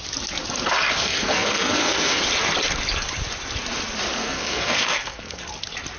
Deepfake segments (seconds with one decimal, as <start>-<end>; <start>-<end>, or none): 1.1-2.2; 4.2-5.4